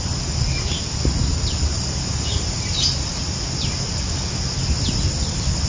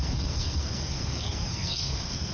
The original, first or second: first